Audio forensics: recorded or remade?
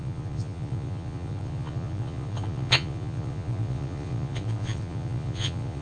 remade